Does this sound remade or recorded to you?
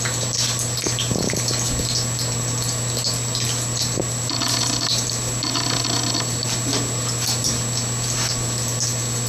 recorded